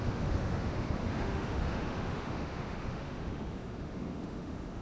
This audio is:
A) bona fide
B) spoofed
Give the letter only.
B